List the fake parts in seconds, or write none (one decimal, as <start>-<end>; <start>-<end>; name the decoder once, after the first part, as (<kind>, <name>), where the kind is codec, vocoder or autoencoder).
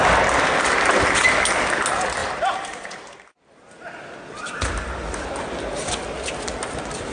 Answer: 2.2-3.0 (vocoder, BigVGAN v2)